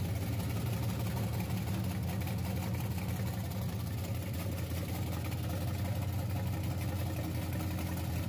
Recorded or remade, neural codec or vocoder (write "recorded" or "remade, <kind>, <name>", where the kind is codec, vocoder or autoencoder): recorded